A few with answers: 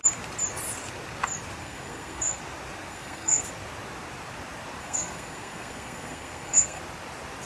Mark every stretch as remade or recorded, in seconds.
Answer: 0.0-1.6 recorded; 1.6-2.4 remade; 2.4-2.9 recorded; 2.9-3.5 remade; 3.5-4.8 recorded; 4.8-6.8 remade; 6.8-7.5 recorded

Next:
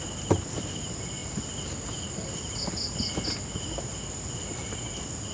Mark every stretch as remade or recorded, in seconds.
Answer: 0.0-5.3 recorded